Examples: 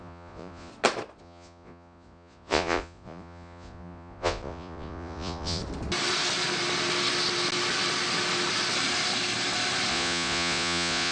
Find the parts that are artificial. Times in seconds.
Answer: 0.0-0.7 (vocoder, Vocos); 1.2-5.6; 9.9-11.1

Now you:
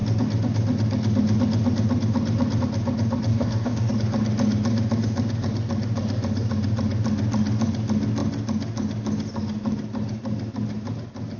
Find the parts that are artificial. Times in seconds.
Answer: 3.3-3.9 (codec, DAC)